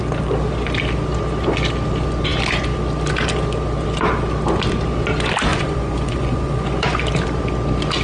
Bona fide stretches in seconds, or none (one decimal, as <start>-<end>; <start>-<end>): 0.0-5.5; 7.0-8.0